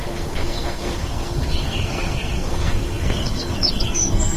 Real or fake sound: fake